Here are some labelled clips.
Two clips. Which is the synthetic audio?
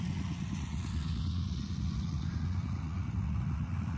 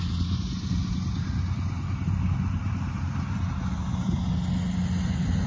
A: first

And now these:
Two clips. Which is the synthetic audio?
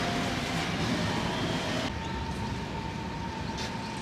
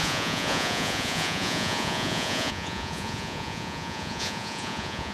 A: second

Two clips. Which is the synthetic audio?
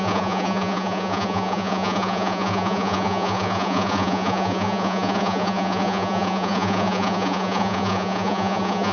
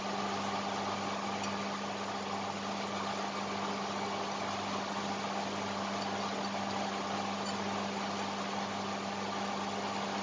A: first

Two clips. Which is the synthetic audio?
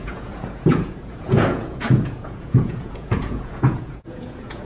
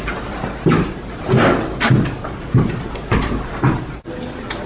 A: first